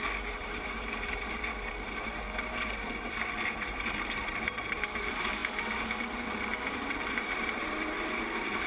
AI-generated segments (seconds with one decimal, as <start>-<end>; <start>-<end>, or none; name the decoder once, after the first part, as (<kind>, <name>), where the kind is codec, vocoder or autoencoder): 0.0-5.4 (vocoder, BigVGAN v2); 6.0-8.7